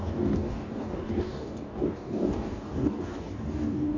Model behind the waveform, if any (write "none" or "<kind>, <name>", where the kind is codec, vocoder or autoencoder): codec, DAC